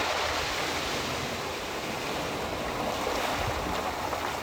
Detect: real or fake real